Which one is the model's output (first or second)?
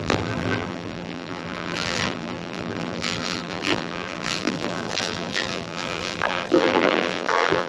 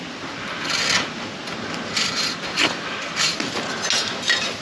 first